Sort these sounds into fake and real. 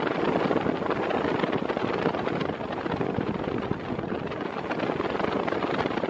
real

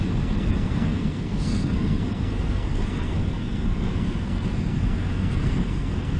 fake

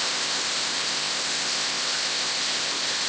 fake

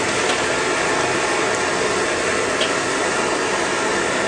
real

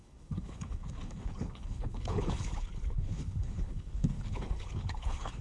fake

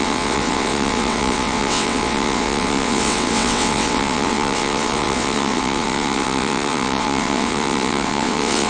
fake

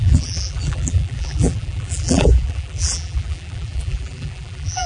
fake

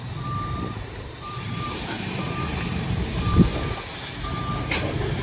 fake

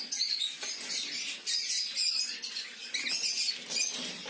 real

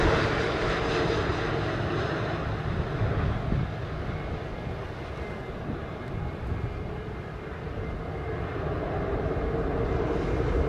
real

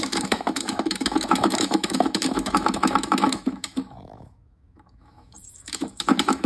fake